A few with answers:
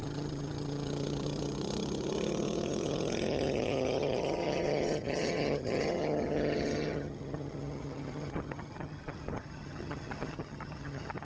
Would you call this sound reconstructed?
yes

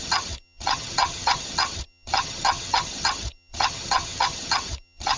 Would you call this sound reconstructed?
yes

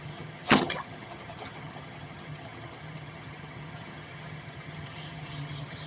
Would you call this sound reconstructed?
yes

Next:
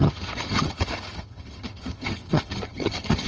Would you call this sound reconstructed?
yes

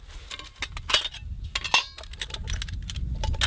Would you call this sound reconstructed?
no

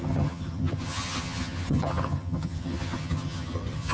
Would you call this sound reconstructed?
yes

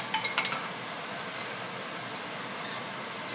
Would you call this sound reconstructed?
no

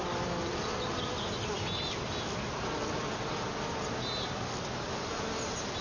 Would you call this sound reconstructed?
no